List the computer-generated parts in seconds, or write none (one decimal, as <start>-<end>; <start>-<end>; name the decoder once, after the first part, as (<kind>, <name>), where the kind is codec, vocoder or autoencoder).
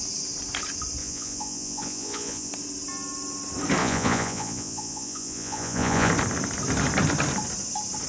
1.0-2.5 (vocoder, Vocos); 3.8-6.1